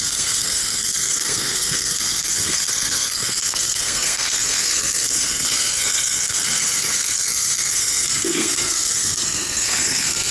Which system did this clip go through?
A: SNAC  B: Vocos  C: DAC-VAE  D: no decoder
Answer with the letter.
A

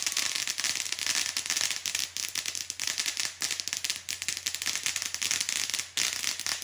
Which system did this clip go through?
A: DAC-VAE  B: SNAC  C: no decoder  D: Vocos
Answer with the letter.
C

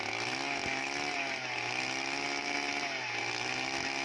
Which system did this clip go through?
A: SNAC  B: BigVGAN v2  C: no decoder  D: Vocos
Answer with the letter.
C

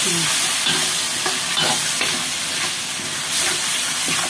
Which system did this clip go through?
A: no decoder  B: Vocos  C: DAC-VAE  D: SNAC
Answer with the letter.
A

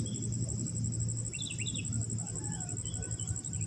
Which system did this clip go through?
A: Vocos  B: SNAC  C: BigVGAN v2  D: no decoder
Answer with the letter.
D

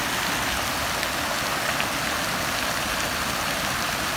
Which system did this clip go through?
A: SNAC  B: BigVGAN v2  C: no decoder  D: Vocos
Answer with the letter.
C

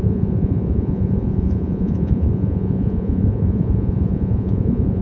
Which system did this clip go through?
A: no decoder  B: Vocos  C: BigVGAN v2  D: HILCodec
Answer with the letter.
B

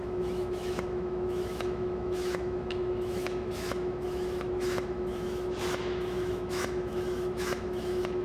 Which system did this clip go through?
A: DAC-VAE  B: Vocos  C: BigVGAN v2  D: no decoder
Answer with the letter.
A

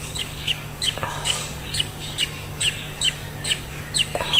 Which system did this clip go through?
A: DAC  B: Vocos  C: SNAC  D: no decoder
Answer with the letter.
A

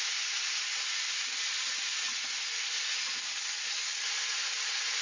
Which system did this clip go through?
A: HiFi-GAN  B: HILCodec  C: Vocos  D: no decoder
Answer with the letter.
D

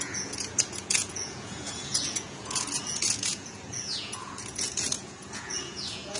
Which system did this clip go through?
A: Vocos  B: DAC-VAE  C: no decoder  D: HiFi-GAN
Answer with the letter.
A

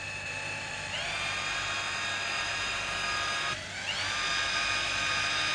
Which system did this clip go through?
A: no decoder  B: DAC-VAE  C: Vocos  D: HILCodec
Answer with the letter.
A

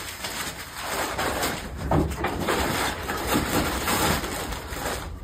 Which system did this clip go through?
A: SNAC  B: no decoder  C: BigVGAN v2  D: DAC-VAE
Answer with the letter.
C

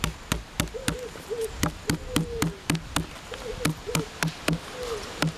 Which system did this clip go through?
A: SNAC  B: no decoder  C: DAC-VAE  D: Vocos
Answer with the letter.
B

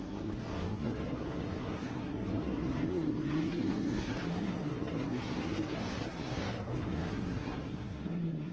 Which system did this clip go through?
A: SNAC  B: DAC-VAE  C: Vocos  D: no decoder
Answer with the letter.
A